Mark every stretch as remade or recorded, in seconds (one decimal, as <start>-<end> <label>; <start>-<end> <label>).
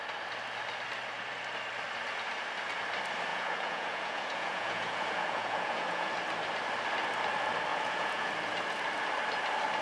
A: 0.0-3.3 recorded; 3.3-6.1 remade; 6.1-7.7 recorded; 7.7-8.3 remade; 8.3-9.8 recorded